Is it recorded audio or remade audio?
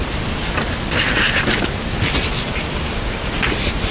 recorded